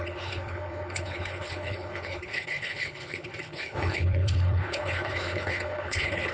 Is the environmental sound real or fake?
fake